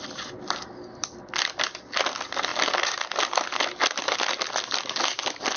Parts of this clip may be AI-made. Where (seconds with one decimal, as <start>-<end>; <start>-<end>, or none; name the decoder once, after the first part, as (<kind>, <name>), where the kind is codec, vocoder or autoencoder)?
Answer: none